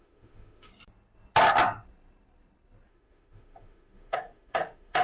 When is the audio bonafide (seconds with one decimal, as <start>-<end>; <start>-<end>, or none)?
0.7-2.9